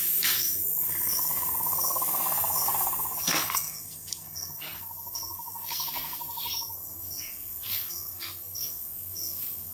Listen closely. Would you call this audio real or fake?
fake